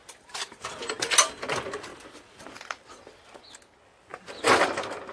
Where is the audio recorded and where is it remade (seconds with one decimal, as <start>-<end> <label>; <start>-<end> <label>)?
0.0-1.1 remade; 1.1-1.9 recorded; 1.9-2.5 remade; 2.5-5.1 recorded